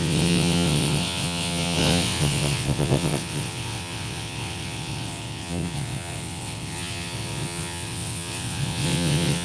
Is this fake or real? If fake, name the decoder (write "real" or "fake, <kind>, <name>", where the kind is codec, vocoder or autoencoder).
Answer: fake, vocoder, WaveNeXt